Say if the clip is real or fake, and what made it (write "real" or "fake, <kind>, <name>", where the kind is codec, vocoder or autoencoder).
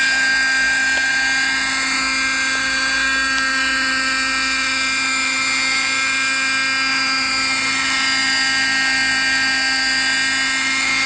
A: real